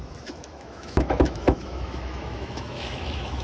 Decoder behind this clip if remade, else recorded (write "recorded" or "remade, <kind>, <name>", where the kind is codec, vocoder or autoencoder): remade, autoencoder, DAC-VAE